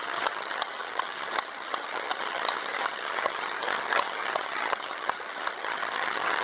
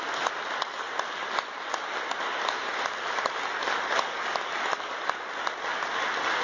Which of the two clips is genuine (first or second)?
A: second